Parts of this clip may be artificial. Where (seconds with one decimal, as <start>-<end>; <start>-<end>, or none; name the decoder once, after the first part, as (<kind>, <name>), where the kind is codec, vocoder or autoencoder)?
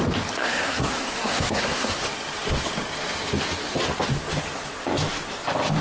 0.4-2.0 (codec, SNAC)